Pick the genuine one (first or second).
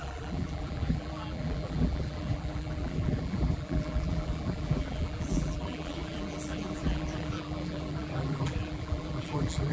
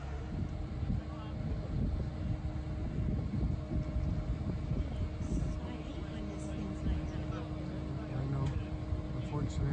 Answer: second